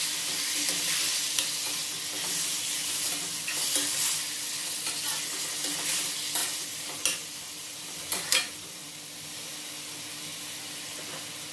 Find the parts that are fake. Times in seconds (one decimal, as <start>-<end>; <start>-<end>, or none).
6.4-8.9; 10.3-11.0